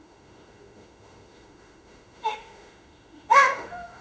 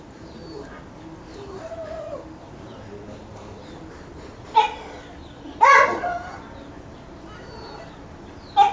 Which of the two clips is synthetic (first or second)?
first